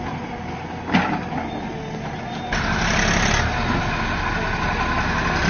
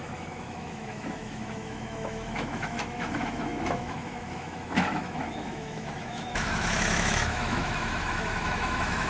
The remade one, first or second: second